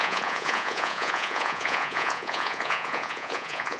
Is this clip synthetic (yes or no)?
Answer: yes